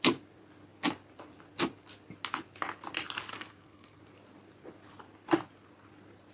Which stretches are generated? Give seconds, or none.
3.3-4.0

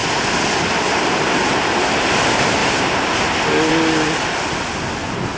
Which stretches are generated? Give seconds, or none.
none